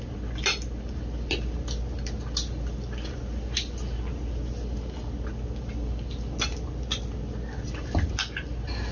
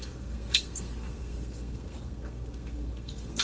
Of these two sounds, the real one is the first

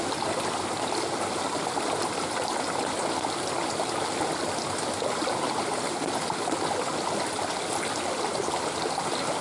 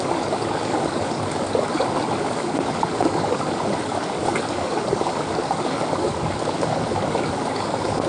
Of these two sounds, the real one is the first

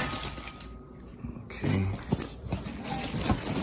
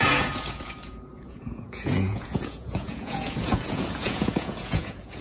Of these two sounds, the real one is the first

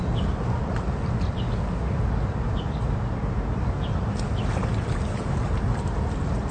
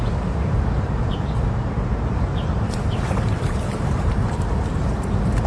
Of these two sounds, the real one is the first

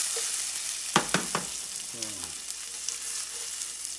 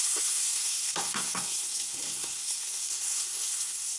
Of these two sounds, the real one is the first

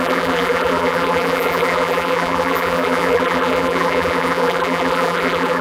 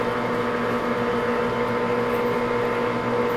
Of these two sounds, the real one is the second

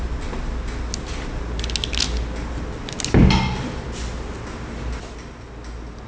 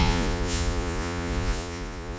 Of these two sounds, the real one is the first